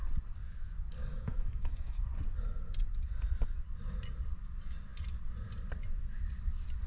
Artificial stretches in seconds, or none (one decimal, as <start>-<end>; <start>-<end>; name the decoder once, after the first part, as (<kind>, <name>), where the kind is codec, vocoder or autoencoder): 1.0-2.0 (autoencoder, DAC-VAE)